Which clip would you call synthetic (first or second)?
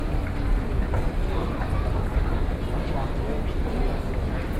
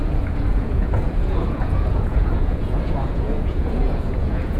second